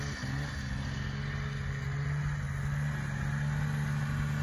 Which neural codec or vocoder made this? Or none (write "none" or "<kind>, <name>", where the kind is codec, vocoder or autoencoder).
none